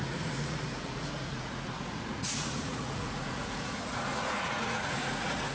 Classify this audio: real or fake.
fake